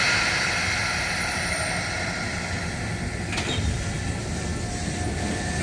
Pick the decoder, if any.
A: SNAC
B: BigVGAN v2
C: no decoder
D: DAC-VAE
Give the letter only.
C